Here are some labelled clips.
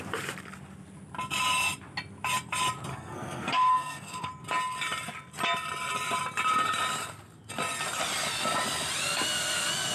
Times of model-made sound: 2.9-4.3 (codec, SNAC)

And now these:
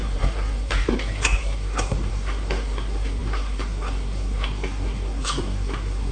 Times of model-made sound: 0.0-6.1 (codec, SNAC)

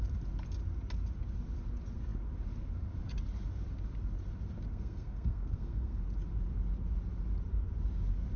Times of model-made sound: 4.7-6.0 (codec, SNAC)

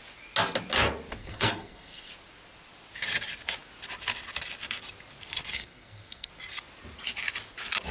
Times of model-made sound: 1.2-2.1 (codec, SNAC); 5.5-6.3